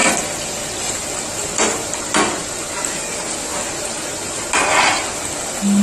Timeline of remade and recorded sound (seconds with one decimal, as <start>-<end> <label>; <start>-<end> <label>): 0.0-5.8 recorded